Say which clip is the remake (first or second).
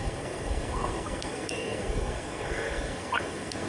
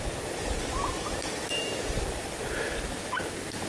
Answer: first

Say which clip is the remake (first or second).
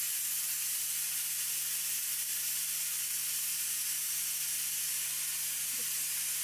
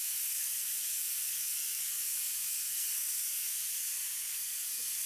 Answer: second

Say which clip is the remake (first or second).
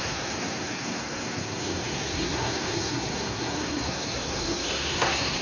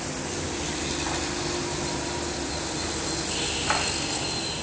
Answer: first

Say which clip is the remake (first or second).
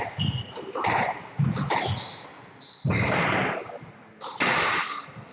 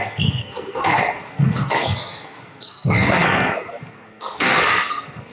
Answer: second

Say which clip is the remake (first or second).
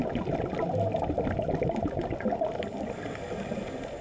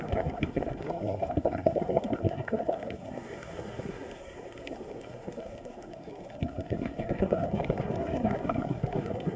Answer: second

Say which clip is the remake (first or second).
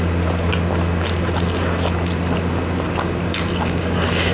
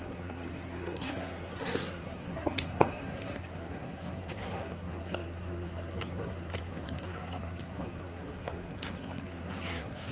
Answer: second